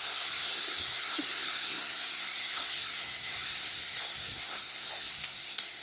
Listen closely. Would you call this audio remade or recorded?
remade